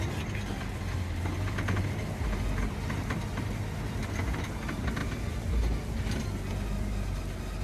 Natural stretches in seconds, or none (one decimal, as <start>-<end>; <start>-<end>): 0.0-7.6